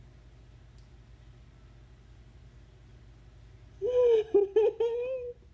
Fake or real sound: real